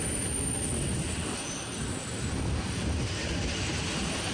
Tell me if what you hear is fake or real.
real